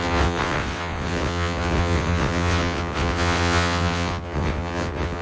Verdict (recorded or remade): remade